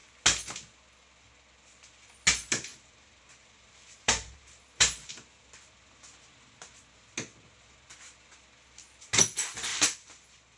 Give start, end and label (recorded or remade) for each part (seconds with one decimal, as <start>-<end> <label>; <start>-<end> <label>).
0.0-2.7 recorded; 2.7-5.1 remade; 5.1-9.7 recorded; 9.7-10.6 remade

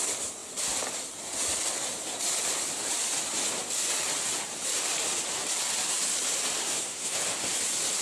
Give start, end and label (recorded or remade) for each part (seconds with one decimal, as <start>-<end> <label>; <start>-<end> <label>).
0.0-6.6 recorded; 6.6-7.2 remade; 7.2-8.0 recorded

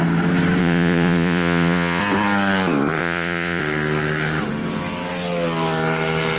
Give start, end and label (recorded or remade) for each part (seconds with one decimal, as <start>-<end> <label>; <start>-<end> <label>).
0.0-0.6 recorded; 0.6-2.0 remade; 2.0-3.0 recorded; 3.0-3.6 remade; 3.6-6.4 recorded

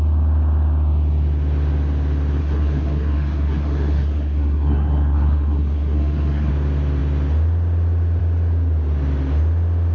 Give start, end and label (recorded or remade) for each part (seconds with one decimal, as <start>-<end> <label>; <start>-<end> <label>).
0.0-2.4 recorded; 2.4-6.5 remade; 6.5-9.9 recorded